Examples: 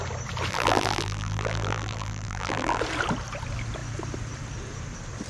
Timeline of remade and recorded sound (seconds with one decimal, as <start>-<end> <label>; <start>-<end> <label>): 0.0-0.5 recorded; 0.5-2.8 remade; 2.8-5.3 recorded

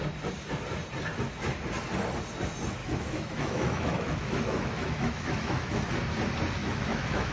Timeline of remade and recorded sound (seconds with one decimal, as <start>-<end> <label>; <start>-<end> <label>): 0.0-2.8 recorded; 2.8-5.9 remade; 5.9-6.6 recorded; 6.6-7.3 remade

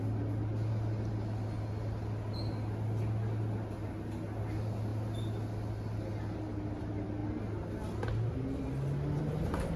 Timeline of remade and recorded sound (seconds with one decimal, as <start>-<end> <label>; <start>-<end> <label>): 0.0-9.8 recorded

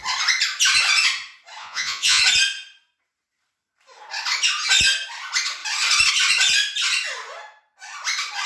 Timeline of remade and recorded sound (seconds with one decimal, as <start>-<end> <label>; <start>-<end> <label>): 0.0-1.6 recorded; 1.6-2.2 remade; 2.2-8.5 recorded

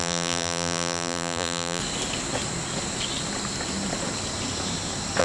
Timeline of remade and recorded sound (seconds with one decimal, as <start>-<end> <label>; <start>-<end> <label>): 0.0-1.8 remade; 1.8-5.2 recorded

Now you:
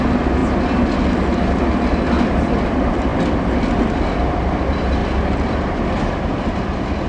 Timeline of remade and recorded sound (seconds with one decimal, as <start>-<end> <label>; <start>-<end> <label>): 0.0-0.4 remade; 0.4-1.6 recorded; 1.6-3.1 remade; 3.1-3.8 recorded; 3.8-7.1 remade